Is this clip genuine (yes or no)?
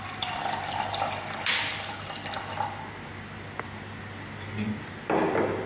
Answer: yes